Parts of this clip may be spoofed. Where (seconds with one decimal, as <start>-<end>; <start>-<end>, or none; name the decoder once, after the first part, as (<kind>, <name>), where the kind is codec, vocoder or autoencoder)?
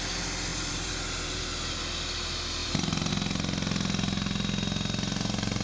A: 0.5-1.4 (vocoder, BigVGAN v2); 2.6-3.1